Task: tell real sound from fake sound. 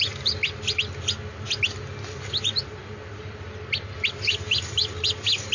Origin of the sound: real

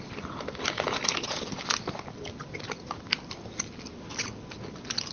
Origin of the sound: real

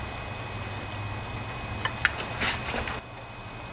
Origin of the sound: real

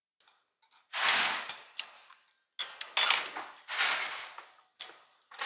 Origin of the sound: real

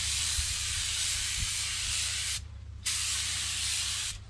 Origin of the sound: fake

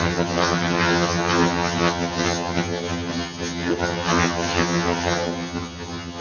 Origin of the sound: fake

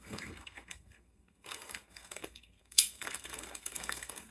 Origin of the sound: fake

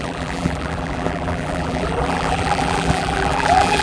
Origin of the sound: fake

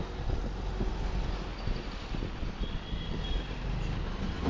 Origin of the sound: real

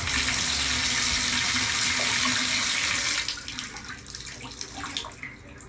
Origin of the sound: real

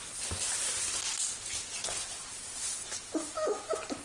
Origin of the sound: real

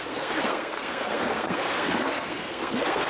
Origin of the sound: fake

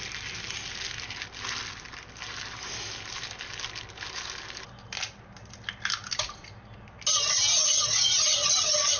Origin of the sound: real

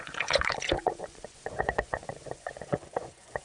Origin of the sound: fake